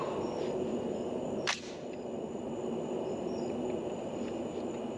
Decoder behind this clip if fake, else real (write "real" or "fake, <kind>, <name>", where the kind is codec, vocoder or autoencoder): fake, vocoder, BigVGAN v2